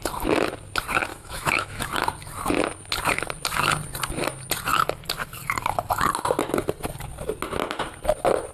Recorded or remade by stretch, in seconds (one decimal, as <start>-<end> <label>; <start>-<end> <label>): 0.0-1.1 recorded; 1.1-1.9 remade; 1.9-8.5 recorded